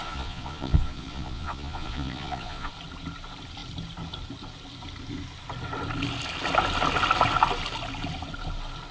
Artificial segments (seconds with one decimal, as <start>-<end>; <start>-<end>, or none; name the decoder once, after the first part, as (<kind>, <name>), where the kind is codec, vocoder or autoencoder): 0.0-2.7 (vocoder, Vocos)